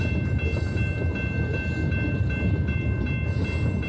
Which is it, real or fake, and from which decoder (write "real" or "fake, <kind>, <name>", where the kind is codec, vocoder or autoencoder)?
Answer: real